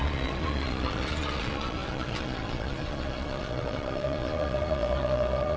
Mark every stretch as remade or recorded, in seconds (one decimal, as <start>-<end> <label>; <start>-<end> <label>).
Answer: 0.0-5.6 remade